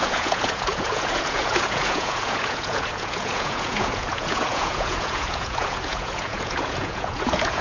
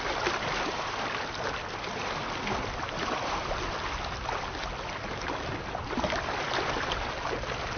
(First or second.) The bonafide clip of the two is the second